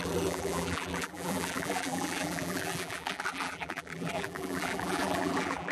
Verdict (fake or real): fake